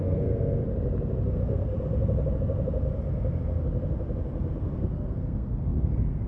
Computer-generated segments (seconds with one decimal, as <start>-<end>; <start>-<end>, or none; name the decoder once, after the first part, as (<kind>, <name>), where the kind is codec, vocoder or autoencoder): 0.0-0.6 (codec, SNAC); 1.2-1.7; 4.6-6.3